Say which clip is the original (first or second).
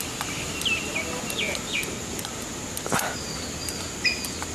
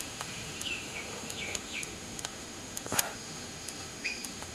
first